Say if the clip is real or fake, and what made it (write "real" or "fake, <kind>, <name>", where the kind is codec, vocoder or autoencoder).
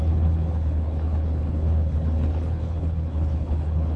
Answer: fake, codec, HILCodec